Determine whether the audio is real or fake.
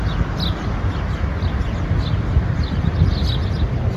real